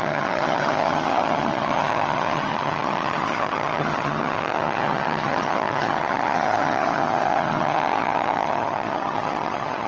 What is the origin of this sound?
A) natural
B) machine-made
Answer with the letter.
B